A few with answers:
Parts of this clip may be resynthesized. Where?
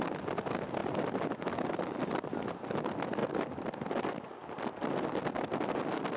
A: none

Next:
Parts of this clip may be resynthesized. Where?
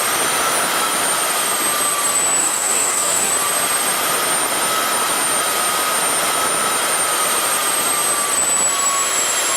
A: 2.4-3.3 (codec, DAC)